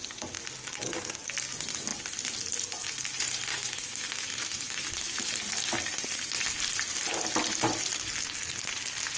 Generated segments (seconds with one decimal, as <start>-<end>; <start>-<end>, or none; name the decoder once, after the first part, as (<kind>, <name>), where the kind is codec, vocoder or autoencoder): 3.5-5.3 (autoencoder, DAC-VAE)